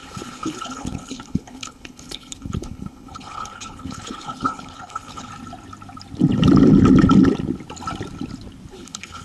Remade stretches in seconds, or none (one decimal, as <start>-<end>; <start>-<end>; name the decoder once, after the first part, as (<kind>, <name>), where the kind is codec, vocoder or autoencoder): 0.0-5.3 (codec, HILCodec); 8.7-9.2

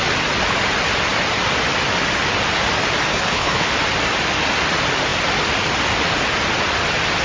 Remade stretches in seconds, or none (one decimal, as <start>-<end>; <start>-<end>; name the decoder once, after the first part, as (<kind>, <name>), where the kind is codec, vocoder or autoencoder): 3.1-3.7 (codec, HILCodec)

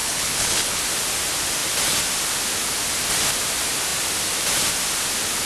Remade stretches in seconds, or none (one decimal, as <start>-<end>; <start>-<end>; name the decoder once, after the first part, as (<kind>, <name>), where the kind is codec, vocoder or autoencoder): 0.0-0.8 (codec, HILCodec)

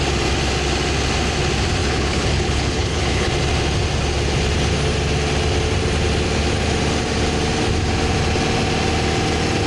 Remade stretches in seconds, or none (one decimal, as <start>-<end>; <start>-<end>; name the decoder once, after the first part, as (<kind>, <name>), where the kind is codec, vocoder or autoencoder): 1.8-3.3 (codec, HILCodec)